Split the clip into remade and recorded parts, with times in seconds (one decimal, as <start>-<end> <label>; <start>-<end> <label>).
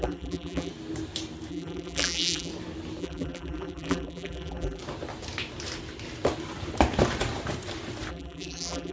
0.0-0.7 remade; 0.7-1.5 recorded; 1.5-2.5 remade; 2.5-3.0 recorded; 3.0-4.8 remade; 4.8-8.1 recorded; 8.1-8.9 remade